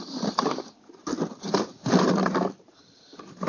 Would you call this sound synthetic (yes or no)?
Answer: no